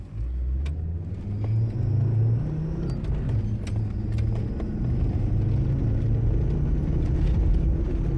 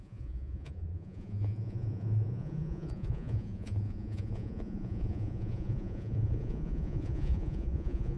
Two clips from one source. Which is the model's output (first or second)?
second